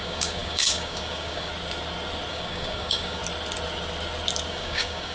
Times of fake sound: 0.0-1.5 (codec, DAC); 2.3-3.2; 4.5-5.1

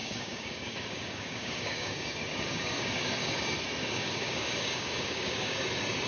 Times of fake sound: 0.0-3.4 (codec, DAC); 3.8-5.6

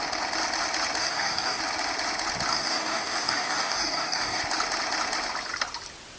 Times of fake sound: 1.0-1.6 (codec, DAC); 2.5-4.4